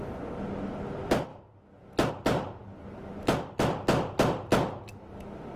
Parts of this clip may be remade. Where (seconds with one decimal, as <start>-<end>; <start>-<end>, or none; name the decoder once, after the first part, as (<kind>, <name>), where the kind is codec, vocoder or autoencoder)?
none